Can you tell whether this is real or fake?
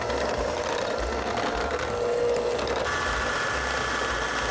real